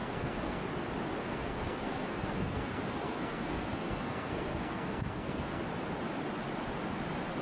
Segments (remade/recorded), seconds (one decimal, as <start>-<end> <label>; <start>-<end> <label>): 0.0-0.6 remade; 0.6-1.2 recorded; 1.2-5.6 remade; 5.6-7.4 recorded